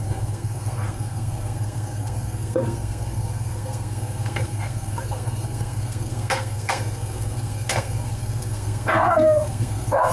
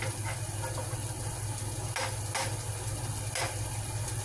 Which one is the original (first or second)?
second